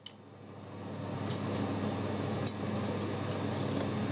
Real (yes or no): yes